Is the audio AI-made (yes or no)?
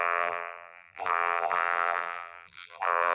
yes